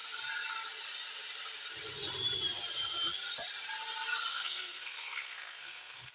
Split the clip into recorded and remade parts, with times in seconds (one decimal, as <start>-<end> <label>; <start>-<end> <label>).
0.0-4.3 recorded; 4.3-6.1 remade